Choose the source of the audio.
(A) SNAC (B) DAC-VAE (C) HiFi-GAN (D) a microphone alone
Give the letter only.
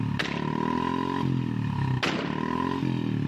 D